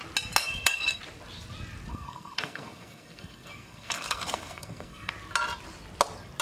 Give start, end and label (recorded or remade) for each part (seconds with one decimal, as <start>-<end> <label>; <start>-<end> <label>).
0.0-0.4 recorded; 0.4-1.0 remade; 1.0-1.9 recorded; 1.9-5.1 remade; 5.1-6.4 recorded